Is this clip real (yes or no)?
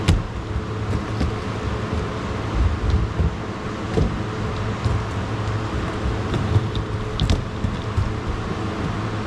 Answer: yes